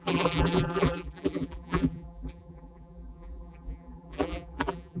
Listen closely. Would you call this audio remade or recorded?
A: remade